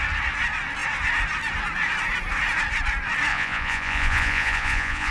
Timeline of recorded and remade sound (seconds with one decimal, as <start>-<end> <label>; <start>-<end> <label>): 0.0-3.3 recorded; 3.3-5.1 remade